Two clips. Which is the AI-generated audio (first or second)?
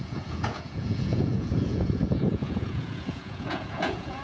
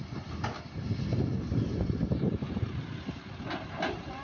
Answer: first